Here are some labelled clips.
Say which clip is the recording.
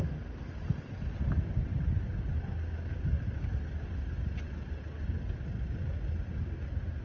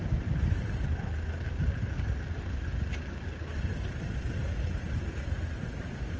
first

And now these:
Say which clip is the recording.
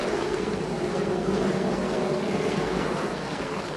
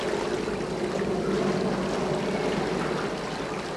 second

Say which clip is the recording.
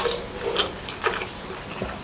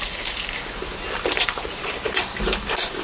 first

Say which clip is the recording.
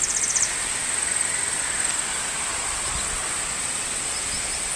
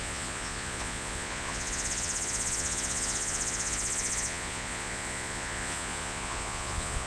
first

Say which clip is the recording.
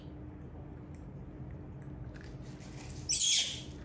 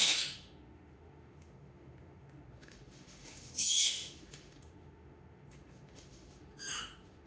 first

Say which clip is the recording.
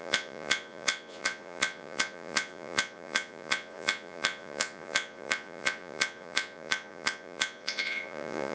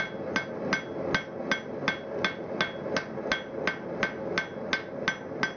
second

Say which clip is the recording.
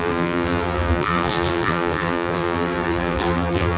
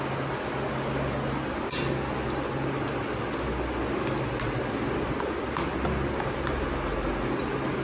second